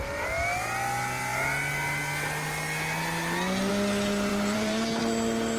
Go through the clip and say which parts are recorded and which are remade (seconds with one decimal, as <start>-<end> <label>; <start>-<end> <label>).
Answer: 0.0-4.3 recorded; 4.3-5.0 remade; 5.0-5.6 recorded